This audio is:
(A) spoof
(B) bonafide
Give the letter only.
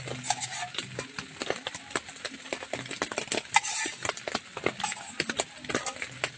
B